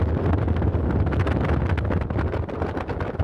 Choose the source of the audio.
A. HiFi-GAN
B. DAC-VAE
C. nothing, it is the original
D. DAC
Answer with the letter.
C